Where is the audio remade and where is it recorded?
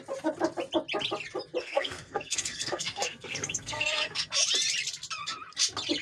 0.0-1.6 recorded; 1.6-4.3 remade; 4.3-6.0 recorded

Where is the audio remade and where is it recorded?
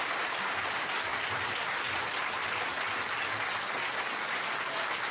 0.0-5.1 recorded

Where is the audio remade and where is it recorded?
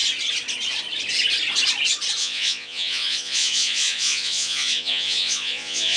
0.0-2.2 recorded; 2.2-6.0 remade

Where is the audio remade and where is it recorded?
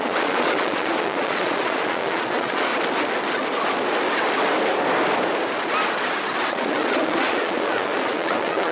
0.0-2.7 remade; 2.7-6.5 recorded; 6.5-8.7 remade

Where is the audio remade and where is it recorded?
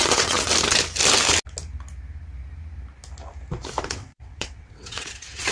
0.0-0.5 remade; 0.5-3.8 recorded; 3.8-5.5 remade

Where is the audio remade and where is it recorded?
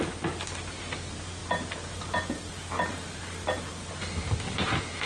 0.0-5.1 recorded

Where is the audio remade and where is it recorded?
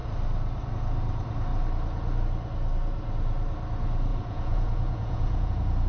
0.0-4.1 recorded; 4.1-5.5 remade; 5.5-5.9 recorded